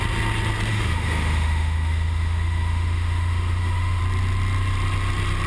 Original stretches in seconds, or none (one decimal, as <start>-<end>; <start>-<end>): 0.0-0.7; 4.0-5.5